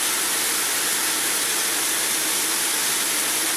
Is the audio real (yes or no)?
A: yes